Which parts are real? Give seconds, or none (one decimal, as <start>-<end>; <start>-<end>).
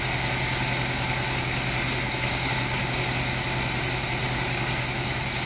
0.0-2.1; 2.8-5.5